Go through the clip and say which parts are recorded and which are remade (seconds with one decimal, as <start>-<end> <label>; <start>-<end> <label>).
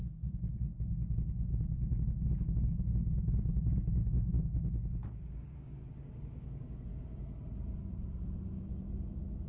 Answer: 0.0-0.8 recorded; 0.8-1.5 remade; 1.5-5.3 recorded; 5.3-6.9 remade; 6.9-9.5 recorded